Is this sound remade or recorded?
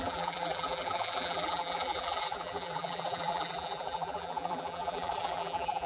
remade